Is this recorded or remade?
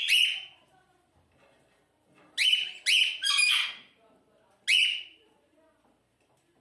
recorded